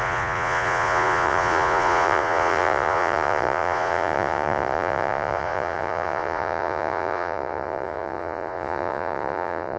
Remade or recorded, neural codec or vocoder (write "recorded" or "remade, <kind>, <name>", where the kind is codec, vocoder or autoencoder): remade, vocoder, Vocos